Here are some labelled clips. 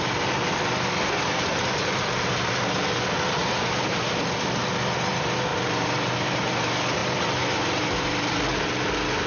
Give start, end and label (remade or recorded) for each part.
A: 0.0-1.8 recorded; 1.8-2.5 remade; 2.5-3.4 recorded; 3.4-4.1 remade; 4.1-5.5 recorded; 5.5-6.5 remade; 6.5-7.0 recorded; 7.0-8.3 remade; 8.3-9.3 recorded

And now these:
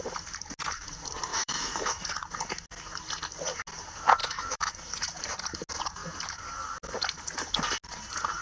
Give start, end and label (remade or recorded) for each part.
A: 0.0-1.3 recorded; 1.3-2.0 remade; 2.0-4.2 recorded; 4.2-4.7 remade; 4.7-8.4 recorded

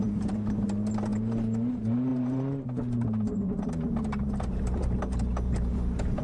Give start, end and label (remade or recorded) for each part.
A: 0.0-6.2 remade

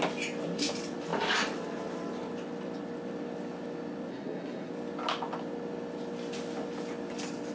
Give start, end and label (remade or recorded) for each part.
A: 0.0-4.1 recorded; 4.1-4.7 remade; 4.7-7.5 recorded

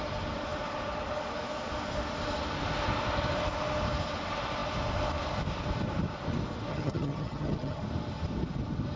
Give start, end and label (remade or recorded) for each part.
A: 0.0-6.7 recorded; 6.7-7.8 remade; 7.8-9.0 recorded

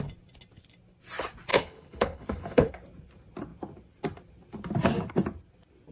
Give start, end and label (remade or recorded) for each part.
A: 0.0-1.5 recorded; 1.5-2.7 remade; 2.7-5.9 recorded